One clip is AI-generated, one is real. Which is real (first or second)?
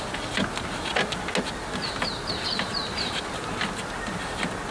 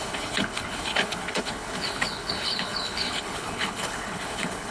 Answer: first